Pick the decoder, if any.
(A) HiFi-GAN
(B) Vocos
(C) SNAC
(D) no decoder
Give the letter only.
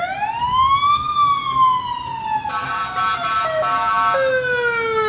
D